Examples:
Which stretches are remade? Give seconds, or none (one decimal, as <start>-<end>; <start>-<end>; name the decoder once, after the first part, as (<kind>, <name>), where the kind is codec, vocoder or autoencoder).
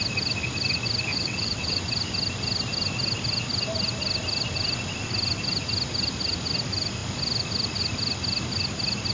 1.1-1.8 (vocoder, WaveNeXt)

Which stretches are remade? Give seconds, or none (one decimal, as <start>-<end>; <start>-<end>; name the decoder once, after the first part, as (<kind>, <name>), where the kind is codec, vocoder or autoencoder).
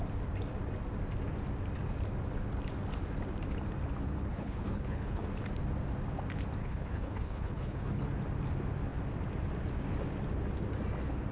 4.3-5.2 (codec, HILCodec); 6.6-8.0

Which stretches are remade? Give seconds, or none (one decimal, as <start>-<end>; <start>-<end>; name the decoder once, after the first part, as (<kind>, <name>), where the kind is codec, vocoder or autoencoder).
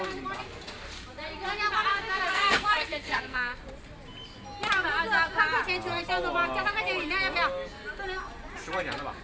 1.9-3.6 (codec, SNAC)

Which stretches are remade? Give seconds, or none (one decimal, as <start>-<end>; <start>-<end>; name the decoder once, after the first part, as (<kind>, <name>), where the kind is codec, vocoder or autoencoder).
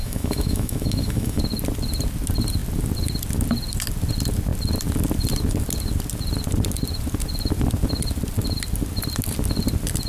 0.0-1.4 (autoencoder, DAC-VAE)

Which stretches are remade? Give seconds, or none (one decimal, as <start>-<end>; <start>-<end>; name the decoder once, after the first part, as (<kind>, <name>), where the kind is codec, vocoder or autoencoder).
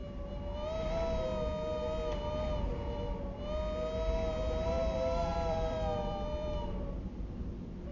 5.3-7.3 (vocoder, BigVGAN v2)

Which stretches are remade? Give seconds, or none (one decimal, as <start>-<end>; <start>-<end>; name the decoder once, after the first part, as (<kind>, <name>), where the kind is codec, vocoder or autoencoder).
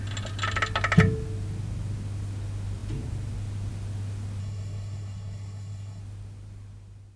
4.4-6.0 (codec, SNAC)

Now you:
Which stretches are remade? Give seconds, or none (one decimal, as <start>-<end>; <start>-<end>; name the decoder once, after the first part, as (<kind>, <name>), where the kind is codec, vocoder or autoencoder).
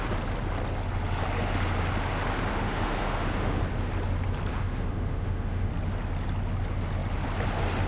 2.5-3.6 (autoencoder, DAC-VAE); 4.5-5.7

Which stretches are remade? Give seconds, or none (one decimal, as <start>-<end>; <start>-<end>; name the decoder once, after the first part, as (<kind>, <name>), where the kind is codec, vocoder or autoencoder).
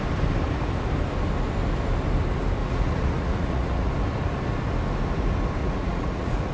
2.6-3.9 (vocoder, Vocos); 5.6-6.5